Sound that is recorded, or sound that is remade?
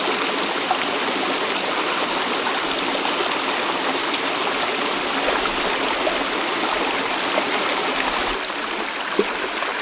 recorded